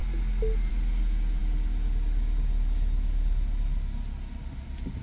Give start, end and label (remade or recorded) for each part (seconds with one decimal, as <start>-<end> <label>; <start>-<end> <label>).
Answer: 0.0-5.0 recorded